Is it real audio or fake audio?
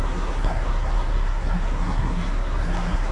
fake